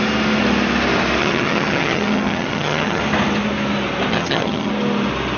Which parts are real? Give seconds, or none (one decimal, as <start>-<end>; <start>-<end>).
0.0-1.2; 3.0-4.1; 4.7-5.4